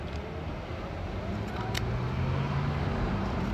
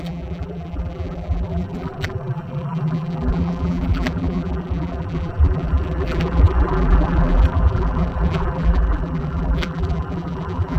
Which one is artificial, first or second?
second